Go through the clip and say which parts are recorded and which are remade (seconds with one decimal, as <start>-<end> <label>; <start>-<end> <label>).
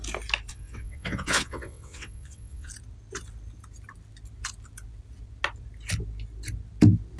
0.0-0.5 recorded; 0.5-2.7 remade; 2.7-7.2 recorded